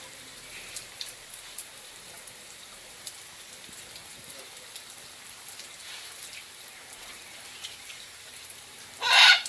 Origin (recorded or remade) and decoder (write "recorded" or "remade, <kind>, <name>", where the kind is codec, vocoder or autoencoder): remade, vocoder, BigVGAN v2